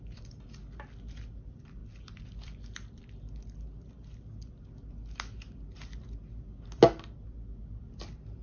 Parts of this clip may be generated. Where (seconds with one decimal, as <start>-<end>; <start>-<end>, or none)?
1.8-3.0

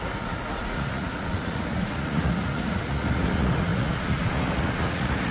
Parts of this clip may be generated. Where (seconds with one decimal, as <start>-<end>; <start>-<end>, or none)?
0.0-5.3

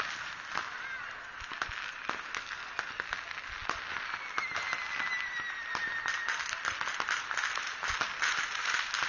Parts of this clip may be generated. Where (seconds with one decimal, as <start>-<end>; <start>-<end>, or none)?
none

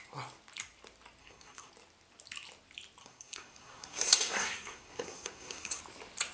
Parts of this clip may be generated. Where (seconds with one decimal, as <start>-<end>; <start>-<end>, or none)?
1.2-1.7; 3.0-5.8

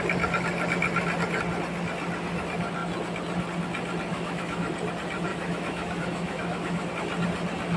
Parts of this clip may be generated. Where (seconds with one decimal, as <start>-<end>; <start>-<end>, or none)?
4.1-4.7; 5.3-6.9